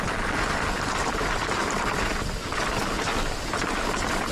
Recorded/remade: recorded